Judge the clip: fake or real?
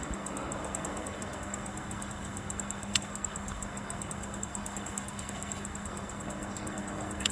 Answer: fake